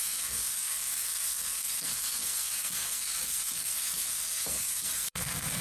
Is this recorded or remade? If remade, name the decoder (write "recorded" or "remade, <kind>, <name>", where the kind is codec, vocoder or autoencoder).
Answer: remade, codec, SNAC